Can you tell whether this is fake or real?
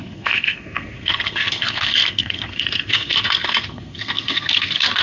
fake